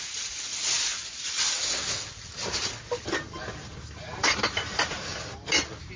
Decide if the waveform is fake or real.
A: real